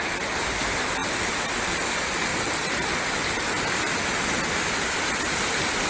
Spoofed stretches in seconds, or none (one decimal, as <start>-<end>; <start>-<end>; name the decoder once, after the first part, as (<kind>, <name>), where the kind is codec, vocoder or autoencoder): none